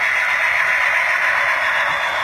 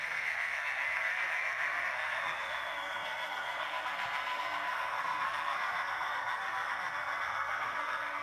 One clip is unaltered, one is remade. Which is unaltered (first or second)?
first